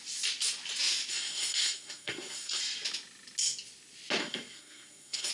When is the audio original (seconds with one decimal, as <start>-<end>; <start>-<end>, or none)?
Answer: 0.0-1.1; 2.6-4.2

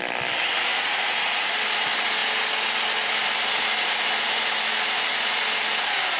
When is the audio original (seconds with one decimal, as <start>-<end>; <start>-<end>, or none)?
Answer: 0.0-0.7; 1.5-6.2

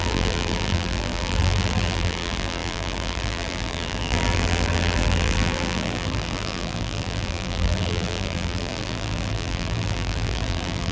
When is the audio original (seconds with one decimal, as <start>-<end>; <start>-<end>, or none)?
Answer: none

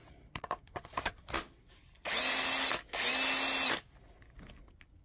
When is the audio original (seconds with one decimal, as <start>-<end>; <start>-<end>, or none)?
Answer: 1.1-5.0

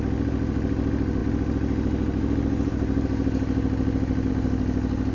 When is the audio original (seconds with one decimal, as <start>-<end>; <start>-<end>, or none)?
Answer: 0.0-5.1

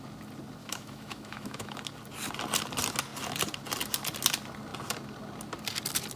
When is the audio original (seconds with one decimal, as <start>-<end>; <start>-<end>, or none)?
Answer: 0.0-0.6; 1.8-6.2

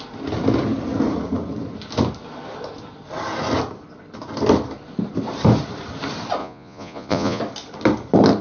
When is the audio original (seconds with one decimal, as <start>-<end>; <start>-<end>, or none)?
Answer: 0.0-6.4; 7.4-8.4